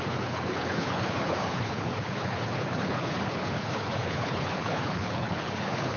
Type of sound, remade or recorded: remade